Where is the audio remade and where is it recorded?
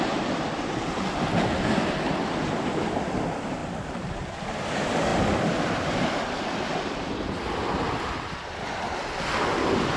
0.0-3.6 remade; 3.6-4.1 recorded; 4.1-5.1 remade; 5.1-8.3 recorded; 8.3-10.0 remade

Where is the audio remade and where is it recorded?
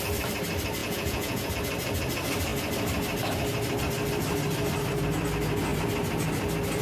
0.0-0.8 recorded; 0.8-1.5 remade; 1.5-6.8 recorded